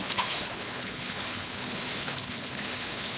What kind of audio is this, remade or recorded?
remade